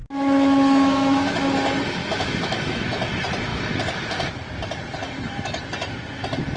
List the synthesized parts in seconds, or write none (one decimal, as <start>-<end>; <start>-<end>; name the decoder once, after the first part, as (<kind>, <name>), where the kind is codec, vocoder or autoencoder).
0.0-1.5 (autoencoder, DAC-VAE); 2.0-2.9